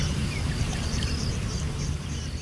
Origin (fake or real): fake